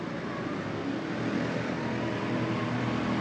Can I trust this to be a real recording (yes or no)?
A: yes